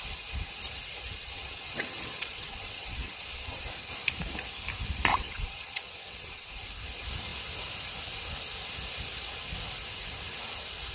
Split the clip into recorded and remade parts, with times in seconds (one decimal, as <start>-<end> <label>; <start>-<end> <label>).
0.0-1.1 recorded; 1.1-3.6 remade; 3.6-5.1 recorded; 5.1-6.5 remade; 6.5-10.9 recorded